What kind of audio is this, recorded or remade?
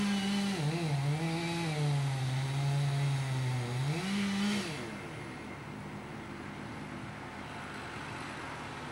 recorded